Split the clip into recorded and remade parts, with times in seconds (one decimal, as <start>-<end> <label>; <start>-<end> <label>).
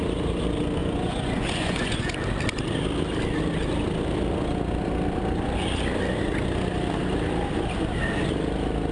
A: 0.0-0.8 recorded; 0.8-2.1 remade; 2.1-8.9 recorded